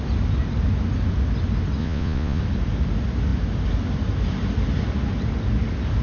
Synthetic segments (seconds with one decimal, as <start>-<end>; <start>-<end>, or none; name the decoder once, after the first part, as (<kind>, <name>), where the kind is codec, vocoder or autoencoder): 1.8-2.4 (vocoder, Vocos)